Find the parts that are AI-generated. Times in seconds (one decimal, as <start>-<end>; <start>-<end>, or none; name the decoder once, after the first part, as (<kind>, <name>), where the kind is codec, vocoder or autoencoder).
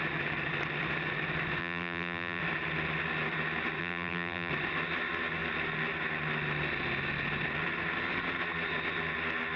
1.6-2.4 (vocoder, BigVGAN v2); 3.8-4.5